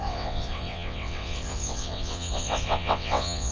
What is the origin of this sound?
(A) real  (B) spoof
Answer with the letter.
B